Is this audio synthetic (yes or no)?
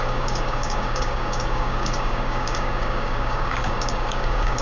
yes